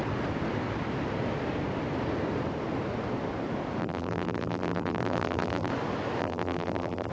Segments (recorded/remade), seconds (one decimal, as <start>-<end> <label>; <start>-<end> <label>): 0.0-3.8 recorded; 3.8-5.7 remade; 5.7-6.2 recorded; 6.2-7.1 remade